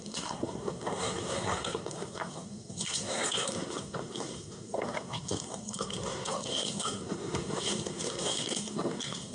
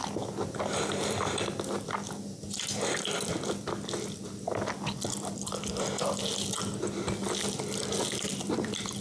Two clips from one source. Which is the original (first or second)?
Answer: second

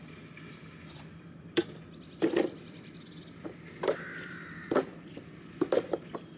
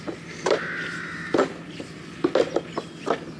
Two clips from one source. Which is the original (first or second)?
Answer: second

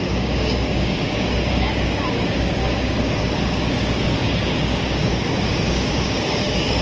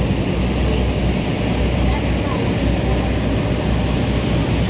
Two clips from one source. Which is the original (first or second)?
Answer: second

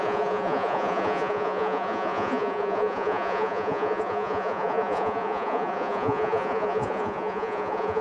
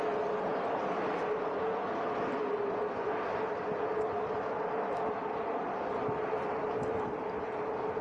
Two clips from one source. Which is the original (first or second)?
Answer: second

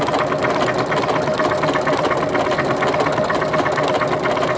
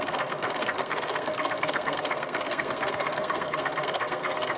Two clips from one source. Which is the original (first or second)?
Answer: first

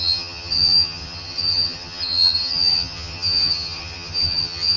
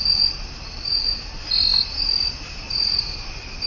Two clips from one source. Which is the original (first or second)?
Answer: second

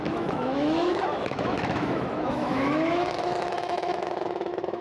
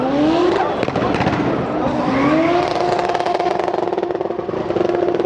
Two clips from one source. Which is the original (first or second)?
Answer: second